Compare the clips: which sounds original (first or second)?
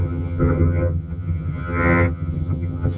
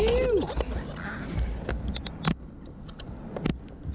second